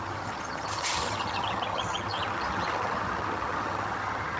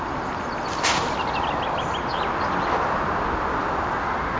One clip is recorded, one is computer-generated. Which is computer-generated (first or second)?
first